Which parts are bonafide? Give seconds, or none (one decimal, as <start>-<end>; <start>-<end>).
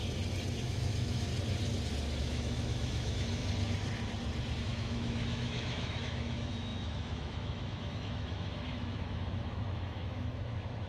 0.0-0.6; 1.3-2.2; 3.4-4.6